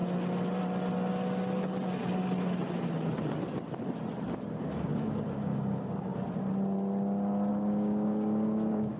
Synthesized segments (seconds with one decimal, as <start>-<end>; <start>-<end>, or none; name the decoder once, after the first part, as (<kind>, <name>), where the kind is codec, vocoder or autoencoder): 4.6-6.1 (codec, DAC); 7.5-9.0